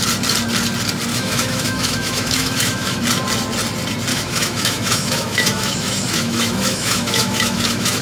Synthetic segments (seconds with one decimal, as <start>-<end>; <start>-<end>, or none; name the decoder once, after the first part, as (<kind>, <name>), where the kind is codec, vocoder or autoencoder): 1.1-3.0 (autoencoder, DAC-VAE); 4.1-8.0